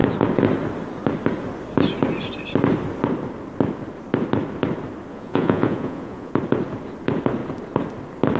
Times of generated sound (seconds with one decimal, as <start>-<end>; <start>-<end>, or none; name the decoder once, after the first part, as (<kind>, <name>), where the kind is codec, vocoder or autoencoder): 5.1-6.3 (vocoder, Vocos)